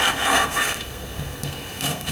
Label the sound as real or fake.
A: fake